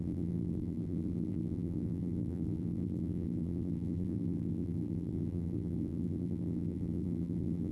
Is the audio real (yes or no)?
no